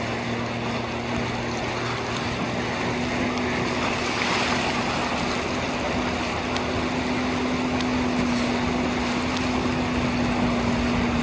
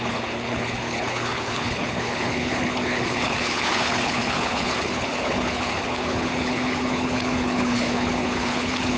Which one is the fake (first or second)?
second